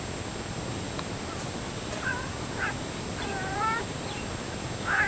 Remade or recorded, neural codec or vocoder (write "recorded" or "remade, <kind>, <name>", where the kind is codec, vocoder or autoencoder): recorded